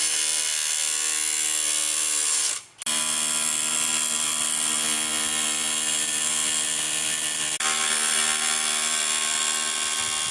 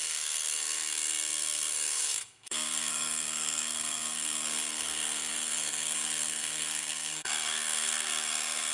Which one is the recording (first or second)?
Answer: first